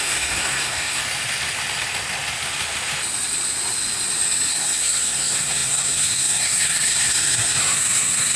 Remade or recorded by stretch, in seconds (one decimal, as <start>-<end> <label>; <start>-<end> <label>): 0.0-1.0 remade; 1.0-4.5 recorded; 4.5-8.4 remade

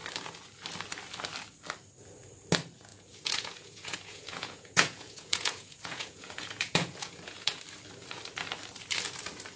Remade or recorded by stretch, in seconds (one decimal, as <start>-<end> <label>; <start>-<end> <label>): 0.0-2.9 recorded; 2.9-7.6 remade; 7.6-9.6 recorded